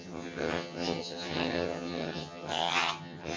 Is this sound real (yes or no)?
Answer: no